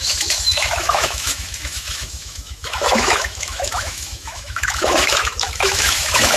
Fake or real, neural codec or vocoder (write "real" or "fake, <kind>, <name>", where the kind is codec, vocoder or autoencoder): fake, autoencoder, DAC-VAE